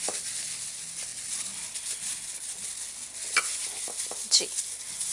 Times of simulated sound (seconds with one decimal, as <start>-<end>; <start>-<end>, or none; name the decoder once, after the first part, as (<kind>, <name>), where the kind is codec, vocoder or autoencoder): none